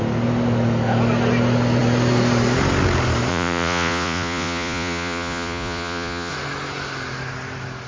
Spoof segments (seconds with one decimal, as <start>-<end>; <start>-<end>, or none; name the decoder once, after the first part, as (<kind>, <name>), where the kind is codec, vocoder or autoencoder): 3.3-6.3 (vocoder, Vocos)